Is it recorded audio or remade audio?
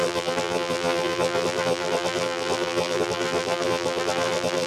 remade